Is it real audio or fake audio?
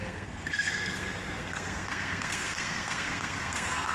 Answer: fake